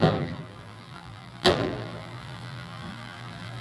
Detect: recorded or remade remade